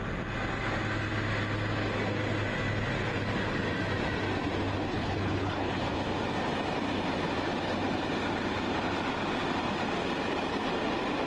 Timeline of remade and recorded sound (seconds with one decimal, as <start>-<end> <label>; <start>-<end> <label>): 0.0-4.9 recorded; 4.9-5.8 remade; 5.8-11.3 recorded